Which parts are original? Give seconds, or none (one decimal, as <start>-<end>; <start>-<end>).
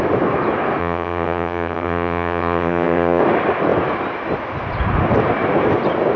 0.0-0.8; 3.2-6.2